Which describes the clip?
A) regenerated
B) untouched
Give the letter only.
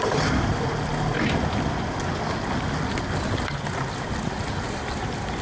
B